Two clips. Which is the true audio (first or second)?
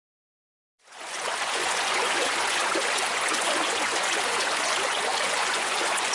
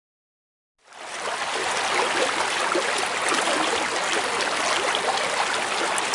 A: second